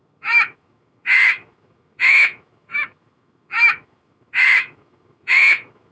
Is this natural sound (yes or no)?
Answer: no